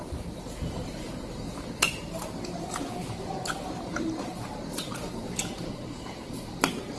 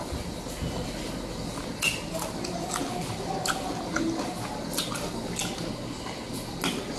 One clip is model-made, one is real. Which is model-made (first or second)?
first